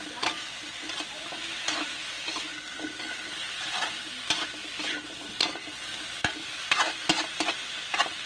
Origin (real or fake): real